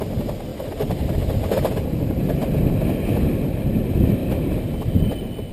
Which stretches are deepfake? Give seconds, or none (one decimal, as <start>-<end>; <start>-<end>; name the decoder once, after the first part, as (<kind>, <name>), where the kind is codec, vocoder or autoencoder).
none